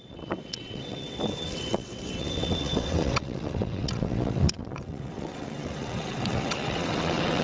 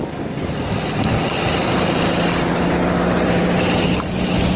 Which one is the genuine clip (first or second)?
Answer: second